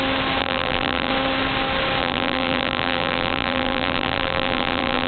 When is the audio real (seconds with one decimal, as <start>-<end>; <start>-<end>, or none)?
0.0-0.4; 1.1-2.0